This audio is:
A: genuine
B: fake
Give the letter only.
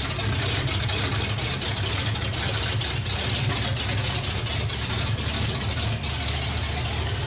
A